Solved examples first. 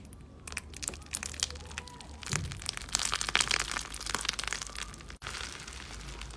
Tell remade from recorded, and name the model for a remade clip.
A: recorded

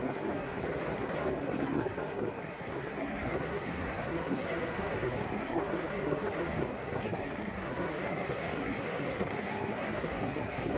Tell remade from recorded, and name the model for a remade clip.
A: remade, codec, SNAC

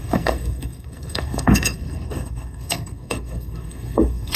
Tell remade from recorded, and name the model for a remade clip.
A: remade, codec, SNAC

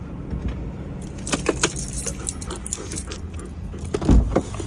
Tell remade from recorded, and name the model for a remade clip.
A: recorded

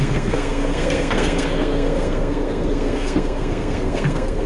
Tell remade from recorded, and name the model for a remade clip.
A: remade, codec, SNAC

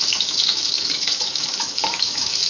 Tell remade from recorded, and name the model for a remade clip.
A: remade, autoencoder, DAC-VAE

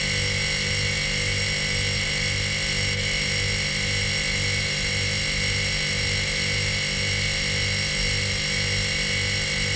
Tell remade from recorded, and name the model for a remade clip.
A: recorded